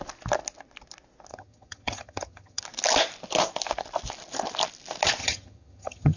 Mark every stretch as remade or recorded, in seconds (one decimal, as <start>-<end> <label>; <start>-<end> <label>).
0.0-1.3 recorded; 1.3-2.6 remade; 2.6-5.2 recorded; 5.2-6.2 remade

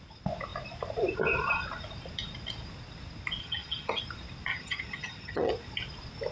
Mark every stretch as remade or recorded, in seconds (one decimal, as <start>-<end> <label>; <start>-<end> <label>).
0.0-3.4 recorded; 3.4-4.0 remade; 4.0-4.5 recorded; 4.5-5.5 remade; 5.5-6.3 recorded

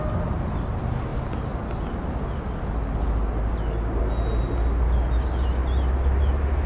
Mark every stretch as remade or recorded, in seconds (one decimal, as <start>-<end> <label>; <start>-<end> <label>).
0.0-6.7 recorded